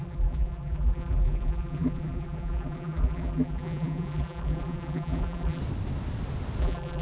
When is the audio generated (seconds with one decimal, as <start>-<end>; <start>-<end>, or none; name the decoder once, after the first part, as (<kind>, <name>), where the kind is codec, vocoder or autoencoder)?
0.0-5.6 (vocoder, BigVGAN v2); 6.6-7.0